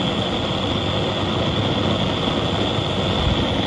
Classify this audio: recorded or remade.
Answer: recorded